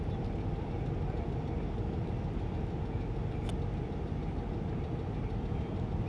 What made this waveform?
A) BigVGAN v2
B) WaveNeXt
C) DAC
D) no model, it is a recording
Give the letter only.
D